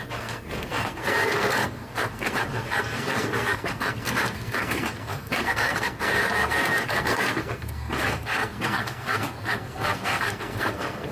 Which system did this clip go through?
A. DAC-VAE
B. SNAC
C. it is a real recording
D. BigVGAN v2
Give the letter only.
B